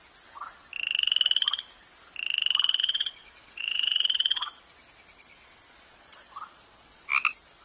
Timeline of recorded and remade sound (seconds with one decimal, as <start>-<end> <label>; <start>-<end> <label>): 0.0-2.8 recorded; 2.8-4.6 remade; 4.6-5.3 recorded; 5.3-7.1 remade; 7.1-7.6 recorded